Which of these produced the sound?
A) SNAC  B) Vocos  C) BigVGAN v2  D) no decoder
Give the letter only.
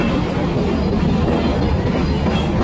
D